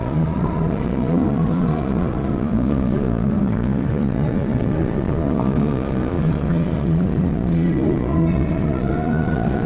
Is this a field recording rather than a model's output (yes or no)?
no